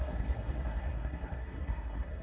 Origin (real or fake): fake